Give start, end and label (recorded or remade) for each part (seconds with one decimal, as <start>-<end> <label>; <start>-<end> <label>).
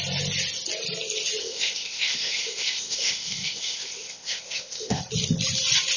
0.0-1.4 recorded; 1.4-5.0 remade; 5.0-6.0 recorded